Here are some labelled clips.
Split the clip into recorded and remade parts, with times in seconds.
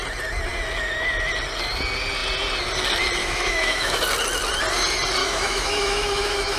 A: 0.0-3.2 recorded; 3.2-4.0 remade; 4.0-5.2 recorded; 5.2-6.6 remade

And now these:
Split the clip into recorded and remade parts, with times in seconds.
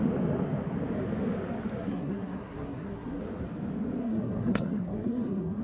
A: 0.0-1.8 recorded; 1.8-3.2 remade; 3.2-4.0 recorded; 4.0-5.6 remade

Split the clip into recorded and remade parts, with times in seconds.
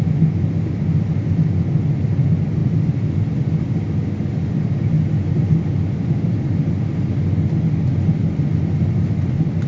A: 0.0-9.7 recorded